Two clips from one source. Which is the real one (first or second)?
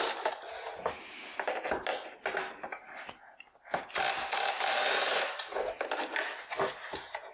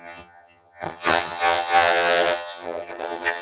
first